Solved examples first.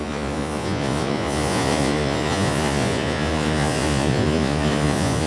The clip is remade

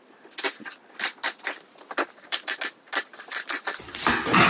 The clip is recorded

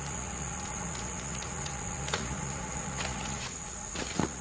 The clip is remade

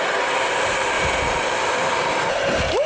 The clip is recorded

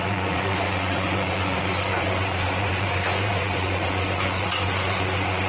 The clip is remade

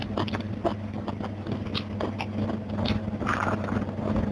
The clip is recorded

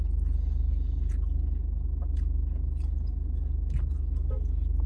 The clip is recorded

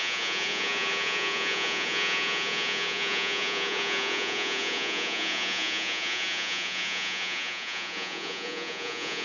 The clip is remade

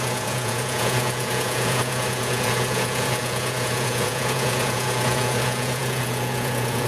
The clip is remade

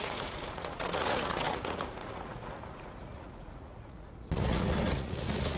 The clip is remade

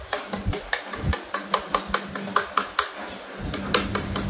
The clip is recorded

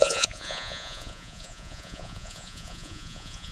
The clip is remade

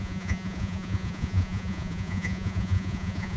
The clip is remade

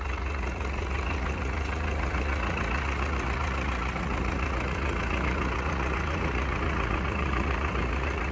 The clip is remade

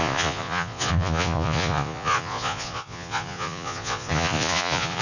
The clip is remade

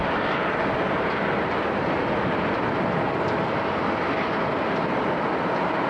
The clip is recorded